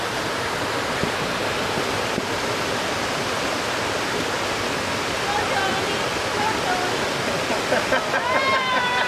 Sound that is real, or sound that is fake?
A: real